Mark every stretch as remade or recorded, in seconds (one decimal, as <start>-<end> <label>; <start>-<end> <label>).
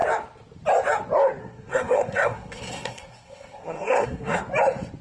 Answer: 0.0-1.4 recorded; 1.4-4.4 remade; 4.4-5.0 recorded